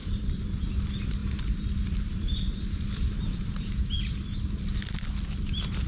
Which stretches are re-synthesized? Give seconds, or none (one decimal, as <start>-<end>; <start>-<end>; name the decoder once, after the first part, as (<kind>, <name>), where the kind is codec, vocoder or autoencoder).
0.0-0.7 (vocoder, BigVGAN v2); 1.2-3.7